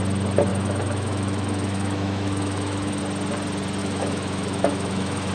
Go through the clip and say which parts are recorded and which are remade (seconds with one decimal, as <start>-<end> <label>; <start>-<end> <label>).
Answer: 0.0-0.5 recorded; 0.5-3.0 remade; 3.0-3.8 recorded; 3.8-5.3 remade